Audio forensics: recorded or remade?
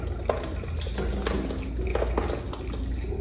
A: recorded